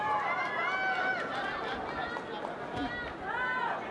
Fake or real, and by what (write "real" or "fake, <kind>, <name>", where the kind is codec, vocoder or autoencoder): real